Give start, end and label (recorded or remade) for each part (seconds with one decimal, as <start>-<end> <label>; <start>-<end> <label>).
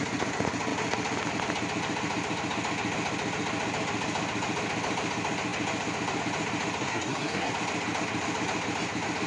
0.0-6.8 recorded; 6.8-7.5 remade; 7.5-9.3 recorded